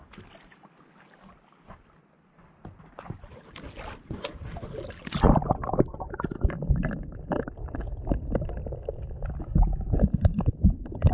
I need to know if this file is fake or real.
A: real